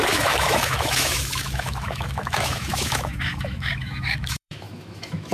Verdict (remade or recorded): remade